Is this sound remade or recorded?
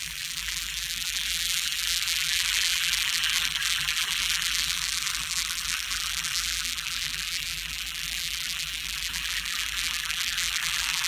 remade